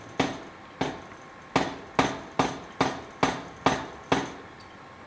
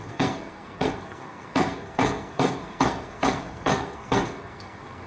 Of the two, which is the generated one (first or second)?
second